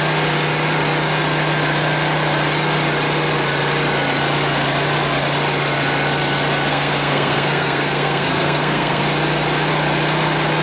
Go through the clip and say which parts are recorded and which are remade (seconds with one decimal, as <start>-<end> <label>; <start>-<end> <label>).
0.0-6.7 recorded; 6.7-9.0 remade; 9.0-10.6 recorded